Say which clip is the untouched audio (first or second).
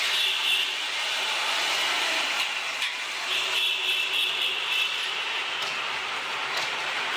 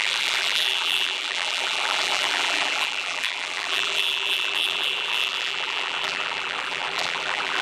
first